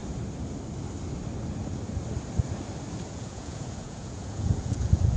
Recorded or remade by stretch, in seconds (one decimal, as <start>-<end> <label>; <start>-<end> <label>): 0.0-3.1 recorded; 3.1-5.2 remade